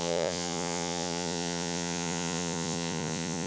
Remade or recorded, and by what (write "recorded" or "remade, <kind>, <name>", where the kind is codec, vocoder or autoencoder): remade, vocoder, Vocos